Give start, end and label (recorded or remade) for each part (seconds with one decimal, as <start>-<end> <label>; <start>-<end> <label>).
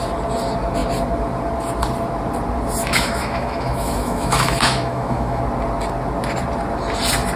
0.0-2.8 recorded; 2.8-5.4 remade; 5.4-7.4 recorded